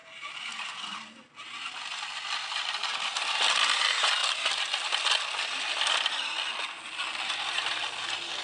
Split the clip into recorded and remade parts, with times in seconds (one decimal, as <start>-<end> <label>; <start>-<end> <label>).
0.0-8.4 recorded